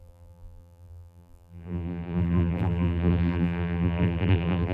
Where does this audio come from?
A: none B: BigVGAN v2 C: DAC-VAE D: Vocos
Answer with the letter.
B